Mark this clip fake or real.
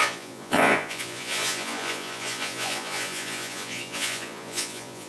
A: fake